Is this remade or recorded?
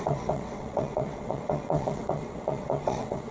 remade